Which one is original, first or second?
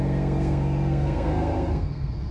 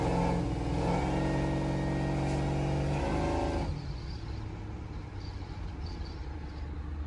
second